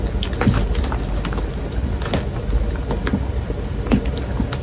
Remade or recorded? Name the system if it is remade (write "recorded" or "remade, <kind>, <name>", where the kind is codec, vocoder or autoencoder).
recorded